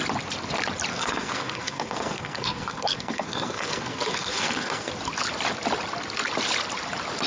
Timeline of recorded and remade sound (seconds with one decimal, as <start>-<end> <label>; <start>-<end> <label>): 0.0-0.9 recorded; 0.9-4.9 remade; 4.9-7.3 recorded